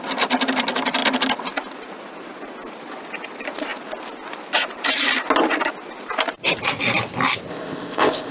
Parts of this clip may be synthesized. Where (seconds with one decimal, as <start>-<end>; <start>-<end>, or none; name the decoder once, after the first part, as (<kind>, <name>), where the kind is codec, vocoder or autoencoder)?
7.5-8.3 (codec, ZipCodec)